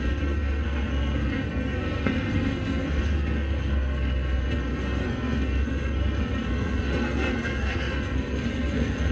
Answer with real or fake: fake